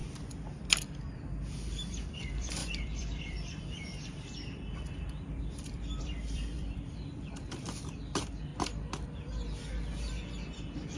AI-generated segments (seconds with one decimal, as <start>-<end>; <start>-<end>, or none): 0.7-8.5; 10.6-11.0